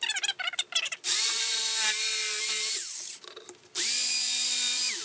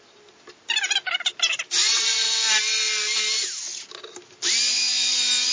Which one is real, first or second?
second